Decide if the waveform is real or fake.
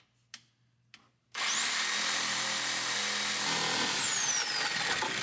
real